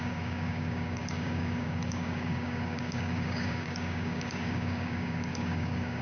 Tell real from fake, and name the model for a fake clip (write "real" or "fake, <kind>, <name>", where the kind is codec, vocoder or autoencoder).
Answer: fake, codec, DAC